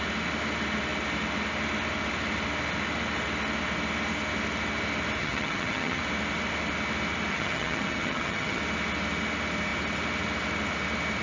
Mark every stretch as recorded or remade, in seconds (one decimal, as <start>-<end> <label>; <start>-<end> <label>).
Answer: 0.0-5.2 recorded; 5.2-6.0 remade; 6.0-7.3 recorded; 7.3-8.6 remade; 8.6-11.2 recorded